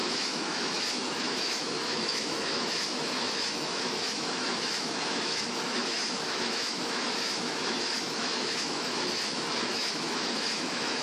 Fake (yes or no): yes